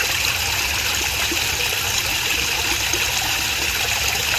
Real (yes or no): yes